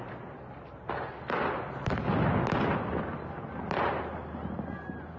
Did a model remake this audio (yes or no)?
no